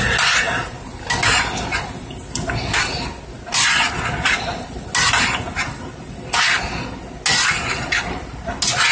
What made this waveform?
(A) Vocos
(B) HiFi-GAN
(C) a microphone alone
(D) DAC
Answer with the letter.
C